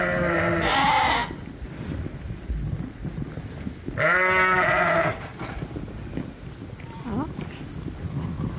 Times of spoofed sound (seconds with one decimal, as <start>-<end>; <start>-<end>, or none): none